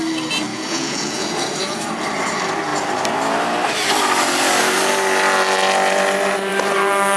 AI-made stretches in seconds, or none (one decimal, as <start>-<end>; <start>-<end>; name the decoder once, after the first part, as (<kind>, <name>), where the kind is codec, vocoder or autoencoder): 0.5-1.8 (vocoder, Vocos)